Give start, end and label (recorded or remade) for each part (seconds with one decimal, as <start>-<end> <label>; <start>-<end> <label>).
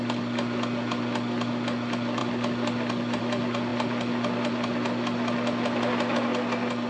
0.0-6.9 recorded